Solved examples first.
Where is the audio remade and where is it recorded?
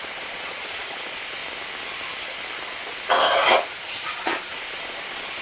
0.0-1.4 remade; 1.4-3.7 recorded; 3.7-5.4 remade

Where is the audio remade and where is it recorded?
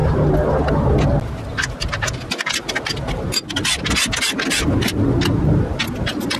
0.0-6.4 recorded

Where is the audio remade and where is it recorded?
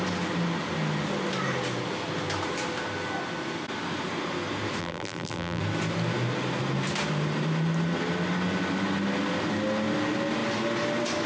0.0-4.8 recorded; 4.8-5.6 remade; 5.6-11.3 recorded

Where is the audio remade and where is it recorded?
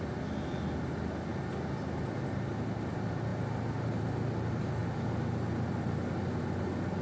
0.0-7.0 recorded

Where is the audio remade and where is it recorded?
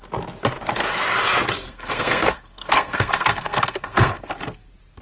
0.0-1.6 recorded; 1.6-4.3 remade; 4.3-5.0 recorded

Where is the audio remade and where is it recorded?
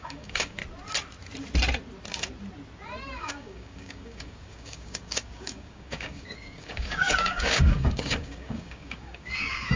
0.0-0.6 remade; 0.6-3.1 recorded; 3.1-9.8 remade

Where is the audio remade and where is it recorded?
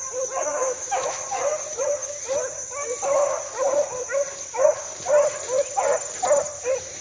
0.0-0.5 recorded; 0.5-1.2 remade; 1.2-7.0 recorded